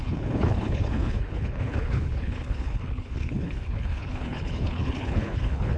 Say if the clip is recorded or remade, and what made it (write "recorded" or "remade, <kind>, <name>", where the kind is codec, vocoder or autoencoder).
remade, codec, HILCodec